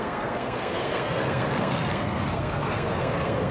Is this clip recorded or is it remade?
remade